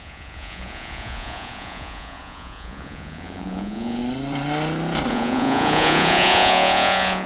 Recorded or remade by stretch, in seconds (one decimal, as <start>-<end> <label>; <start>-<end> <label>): 0.0-4.0 remade; 4.0-5.1 recorded; 5.1-7.3 remade